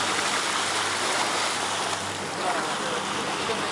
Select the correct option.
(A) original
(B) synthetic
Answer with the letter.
A